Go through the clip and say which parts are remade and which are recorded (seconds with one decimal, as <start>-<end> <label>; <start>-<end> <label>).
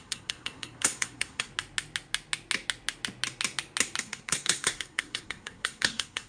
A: 0.0-1.5 remade; 1.5-4.0 recorded; 4.0-6.3 remade